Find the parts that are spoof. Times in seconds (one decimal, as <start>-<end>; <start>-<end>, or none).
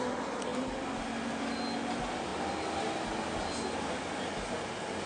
none